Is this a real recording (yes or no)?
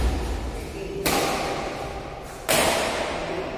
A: yes